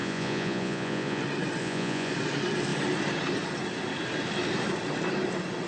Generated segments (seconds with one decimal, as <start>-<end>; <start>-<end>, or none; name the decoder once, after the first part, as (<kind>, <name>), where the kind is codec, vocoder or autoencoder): 0.0-1.2 (vocoder, Vocos); 1.6-2.1